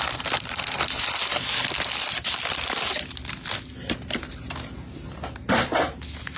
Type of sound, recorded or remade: recorded